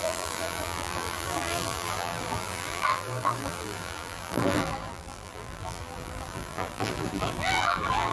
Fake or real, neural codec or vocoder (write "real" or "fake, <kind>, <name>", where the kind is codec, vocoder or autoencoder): fake, vocoder, BigVGAN v2